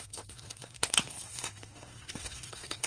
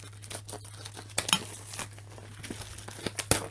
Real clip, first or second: second